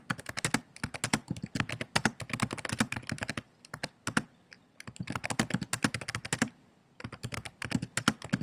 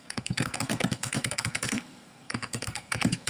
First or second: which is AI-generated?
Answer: second